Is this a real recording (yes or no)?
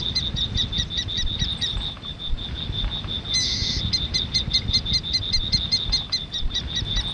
yes